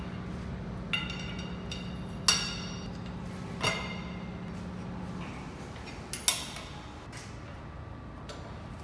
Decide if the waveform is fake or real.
real